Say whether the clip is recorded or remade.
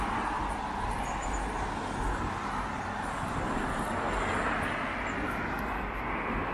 recorded